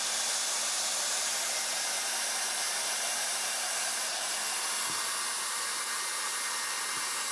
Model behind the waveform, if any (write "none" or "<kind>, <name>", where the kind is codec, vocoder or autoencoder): none